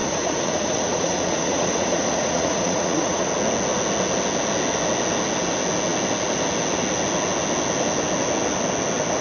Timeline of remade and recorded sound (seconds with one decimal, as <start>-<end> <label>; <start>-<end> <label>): 0.0-3.3 remade; 3.3-9.2 recorded